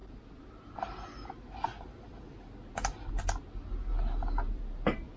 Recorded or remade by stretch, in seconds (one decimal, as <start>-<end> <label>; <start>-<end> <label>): 0.0-5.2 recorded